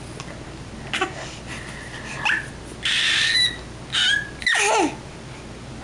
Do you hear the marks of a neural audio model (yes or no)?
no